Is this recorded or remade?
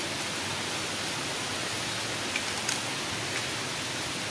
recorded